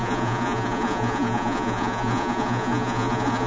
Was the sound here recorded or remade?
remade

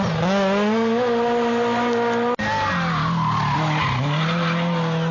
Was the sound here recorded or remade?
recorded